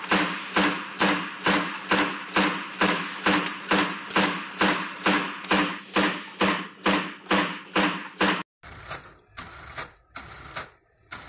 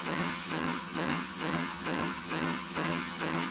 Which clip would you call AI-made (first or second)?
second